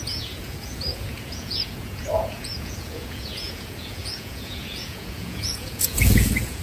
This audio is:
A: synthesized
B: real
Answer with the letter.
A